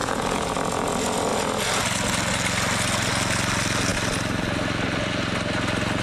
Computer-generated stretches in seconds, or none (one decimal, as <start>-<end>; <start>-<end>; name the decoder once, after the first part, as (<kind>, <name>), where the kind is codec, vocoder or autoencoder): 0.0-0.5 (vocoder, Vocos)